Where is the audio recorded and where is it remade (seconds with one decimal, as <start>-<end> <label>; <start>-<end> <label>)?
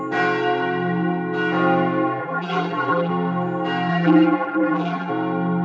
0.0-2.2 recorded; 2.2-3.1 remade; 3.1-3.9 recorded; 3.9-5.1 remade; 5.1-5.6 recorded